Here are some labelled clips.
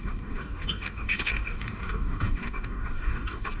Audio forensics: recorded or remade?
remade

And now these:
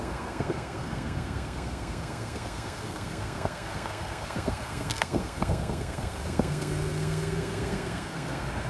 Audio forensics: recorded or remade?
remade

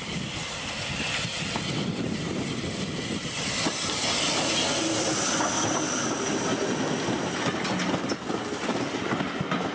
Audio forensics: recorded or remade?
recorded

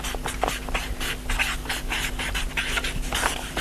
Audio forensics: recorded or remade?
recorded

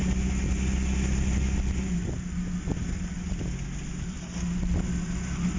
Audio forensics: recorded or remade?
recorded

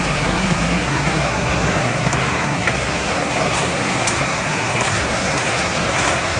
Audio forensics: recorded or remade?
remade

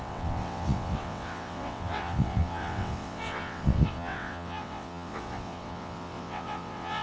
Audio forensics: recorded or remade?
remade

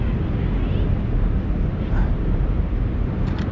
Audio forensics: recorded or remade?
recorded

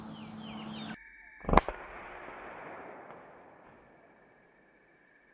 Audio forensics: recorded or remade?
recorded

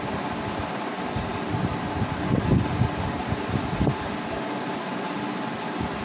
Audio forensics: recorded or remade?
recorded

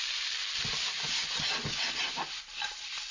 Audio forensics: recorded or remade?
recorded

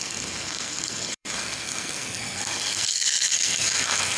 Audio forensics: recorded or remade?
remade